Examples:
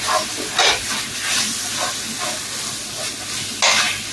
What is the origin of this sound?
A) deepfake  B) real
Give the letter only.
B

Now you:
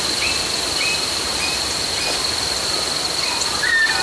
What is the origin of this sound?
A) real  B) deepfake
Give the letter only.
A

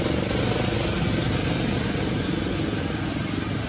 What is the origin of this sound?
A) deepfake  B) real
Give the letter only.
B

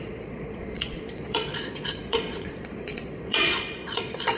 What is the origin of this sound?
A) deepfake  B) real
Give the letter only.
A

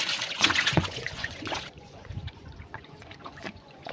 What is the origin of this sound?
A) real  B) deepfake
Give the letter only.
B